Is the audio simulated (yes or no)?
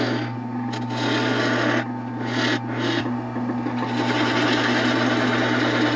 no